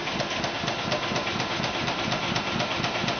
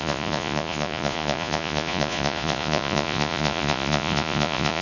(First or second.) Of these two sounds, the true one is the first